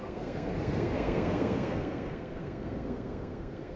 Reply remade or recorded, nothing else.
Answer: remade